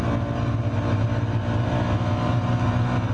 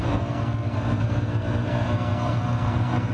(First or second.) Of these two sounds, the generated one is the second